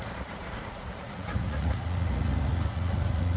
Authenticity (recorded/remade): remade